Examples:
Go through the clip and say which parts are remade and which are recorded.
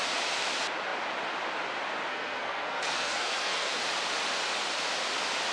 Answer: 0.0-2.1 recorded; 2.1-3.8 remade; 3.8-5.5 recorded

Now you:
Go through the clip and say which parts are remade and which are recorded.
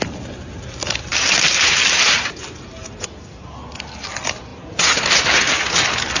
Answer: 0.0-1.1 recorded; 1.1-2.4 remade; 2.4-6.2 recorded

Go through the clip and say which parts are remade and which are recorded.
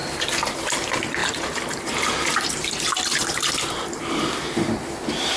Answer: 0.0-1.2 recorded; 1.2-4.4 remade; 4.4-5.4 recorded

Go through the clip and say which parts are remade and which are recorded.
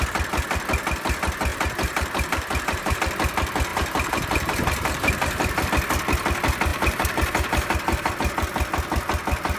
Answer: 0.0-1.5 recorded; 1.5-3.0 remade; 3.0-3.7 recorded; 3.7-5.7 remade; 5.7-6.7 recorded; 6.7-8.1 remade; 8.1-9.6 recorded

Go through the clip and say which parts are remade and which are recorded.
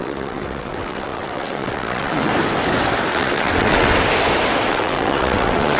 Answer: 0.0-2.3 remade; 2.3-3.1 recorded; 3.1-3.9 remade; 3.9-4.7 recorded; 4.7-5.8 remade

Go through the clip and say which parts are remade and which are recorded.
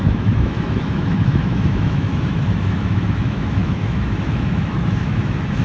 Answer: 0.0-5.6 remade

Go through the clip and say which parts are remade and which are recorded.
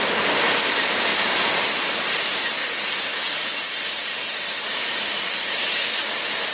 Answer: 0.0-6.5 recorded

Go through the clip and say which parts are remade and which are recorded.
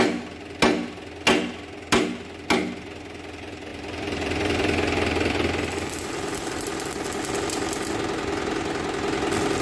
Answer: 0.0-3.7 recorded; 3.7-6.6 remade; 6.6-9.6 recorded